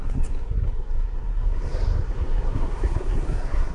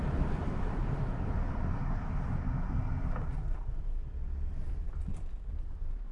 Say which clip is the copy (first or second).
first